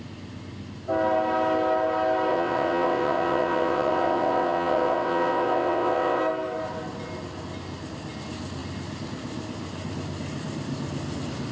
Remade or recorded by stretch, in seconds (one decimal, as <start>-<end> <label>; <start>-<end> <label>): 0.0-2.3 recorded; 2.3-6.2 remade; 6.2-11.5 recorded